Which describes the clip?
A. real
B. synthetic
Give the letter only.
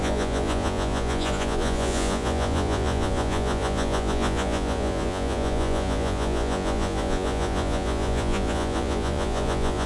B